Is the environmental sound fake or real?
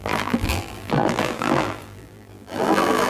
fake